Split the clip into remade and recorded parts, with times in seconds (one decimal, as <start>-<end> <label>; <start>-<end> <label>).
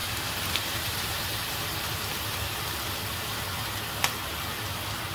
0.0-1.6 remade; 1.6-5.1 recorded